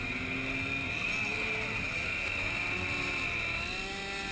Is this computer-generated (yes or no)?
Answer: no